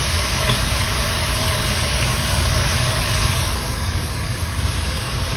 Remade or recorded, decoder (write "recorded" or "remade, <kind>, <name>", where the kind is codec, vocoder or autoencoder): remade, codec, DAC